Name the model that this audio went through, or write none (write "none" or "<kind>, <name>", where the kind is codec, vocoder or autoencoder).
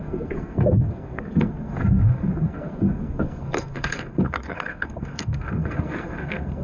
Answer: codec, SNAC